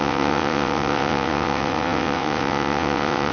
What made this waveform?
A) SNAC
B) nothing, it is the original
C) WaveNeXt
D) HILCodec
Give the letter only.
C